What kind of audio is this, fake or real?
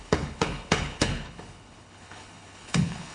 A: fake